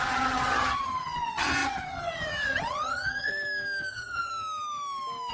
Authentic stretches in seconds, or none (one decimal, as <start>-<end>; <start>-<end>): 3.3-3.9; 4.3-5.3